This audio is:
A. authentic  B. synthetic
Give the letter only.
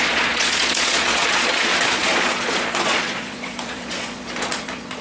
B